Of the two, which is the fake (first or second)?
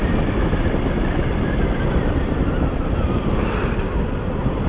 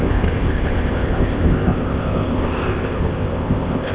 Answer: second